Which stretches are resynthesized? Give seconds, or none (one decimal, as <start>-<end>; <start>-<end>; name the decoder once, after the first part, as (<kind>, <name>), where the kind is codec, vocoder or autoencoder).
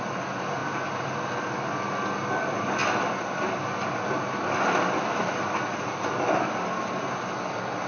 none